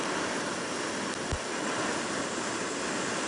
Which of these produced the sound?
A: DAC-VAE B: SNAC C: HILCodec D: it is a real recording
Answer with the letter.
D